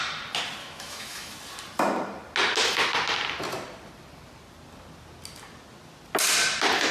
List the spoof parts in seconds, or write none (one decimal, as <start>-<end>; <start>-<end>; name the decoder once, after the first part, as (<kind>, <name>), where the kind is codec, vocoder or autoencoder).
0.6-1.3 (autoencoder, DAC-VAE)